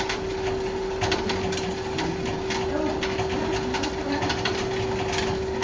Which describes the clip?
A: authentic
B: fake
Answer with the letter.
A